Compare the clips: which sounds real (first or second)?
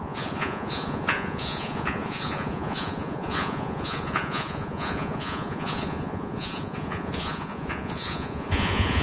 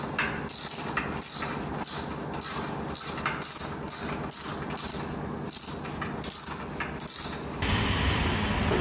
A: second